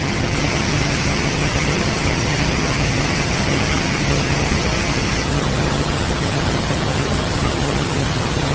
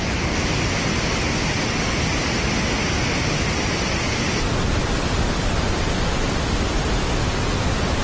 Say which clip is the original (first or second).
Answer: second